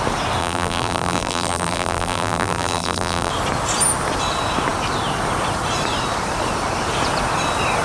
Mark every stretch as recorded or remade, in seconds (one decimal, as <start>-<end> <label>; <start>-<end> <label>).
0.0-0.4 recorded; 0.4-3.3 remade; 3.3-7.8 recorded